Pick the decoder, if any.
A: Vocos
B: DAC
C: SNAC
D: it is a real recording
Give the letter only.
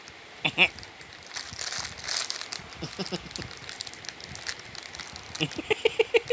D